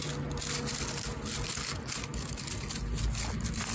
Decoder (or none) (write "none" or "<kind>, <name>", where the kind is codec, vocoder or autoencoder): none